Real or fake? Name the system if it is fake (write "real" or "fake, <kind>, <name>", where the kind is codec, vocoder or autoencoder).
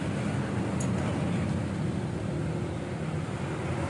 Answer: real